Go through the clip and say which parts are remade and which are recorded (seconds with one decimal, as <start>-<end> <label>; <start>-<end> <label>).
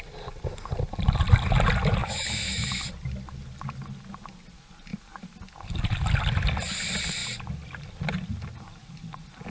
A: 0.0-2.0 recorded; 2.0-2.7 remade; 2.7-9.5 recorded